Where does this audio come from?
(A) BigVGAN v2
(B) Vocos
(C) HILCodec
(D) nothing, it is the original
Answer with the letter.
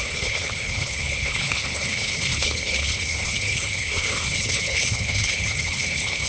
C